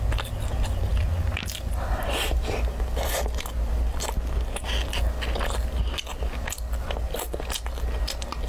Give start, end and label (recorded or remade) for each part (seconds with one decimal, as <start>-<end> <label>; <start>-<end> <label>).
0.0-8.5 recorded